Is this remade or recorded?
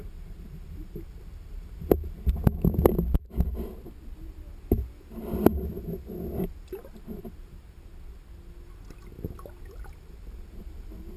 recorded